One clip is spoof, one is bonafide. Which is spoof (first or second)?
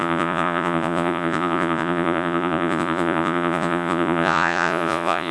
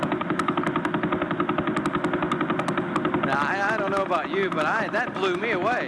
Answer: first